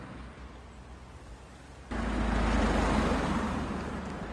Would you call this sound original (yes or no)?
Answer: yes